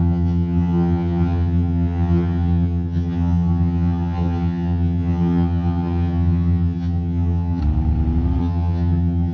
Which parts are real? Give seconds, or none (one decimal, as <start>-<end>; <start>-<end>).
7.6-8.4